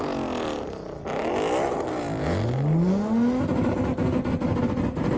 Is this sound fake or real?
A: real